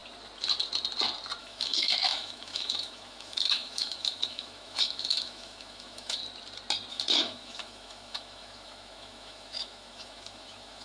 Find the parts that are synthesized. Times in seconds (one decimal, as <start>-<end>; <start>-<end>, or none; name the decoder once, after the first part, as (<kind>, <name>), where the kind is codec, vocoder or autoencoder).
1.4-6.2 (autoencoder, DAC-VAE); 6.9-10.8